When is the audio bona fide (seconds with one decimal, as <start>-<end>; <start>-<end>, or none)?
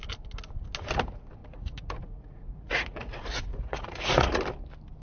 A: 0.0-1.4; 4.4-5.0